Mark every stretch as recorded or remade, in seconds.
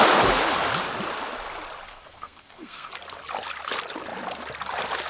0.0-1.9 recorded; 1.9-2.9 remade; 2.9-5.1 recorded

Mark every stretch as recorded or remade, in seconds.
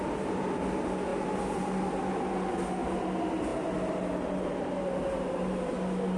0.0-6.2 recorded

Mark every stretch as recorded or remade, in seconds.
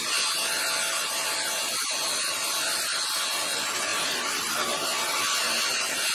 0.0-6.1 recorded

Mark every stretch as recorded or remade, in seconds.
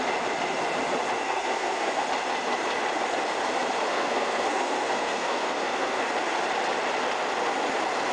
0.0-1.2 recorded; 1.2-2.0 remade; 2.0-3.9 recorded; 3.9-6.0 remade; 6.0-8.1 recorded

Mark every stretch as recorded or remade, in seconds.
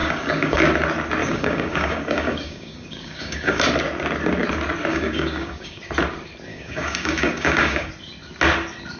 0.0-0.6 remade; 0.6-1.2 recorded; 1.2-3.6 remade; 3.6-4.9 recorded; 4.9-5.8 remade; 5.8-6.5 recorded; 6.5-7.9 remade; 7.9-9.0 recorded